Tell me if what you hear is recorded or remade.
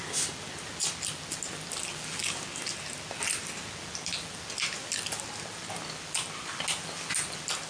recorded